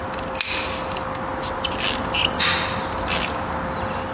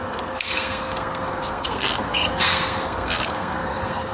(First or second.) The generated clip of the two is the second